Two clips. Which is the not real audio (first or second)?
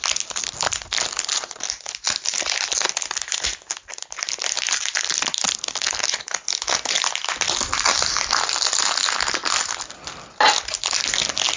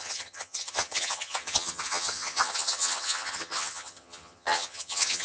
second